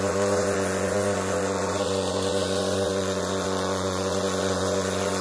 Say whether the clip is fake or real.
fake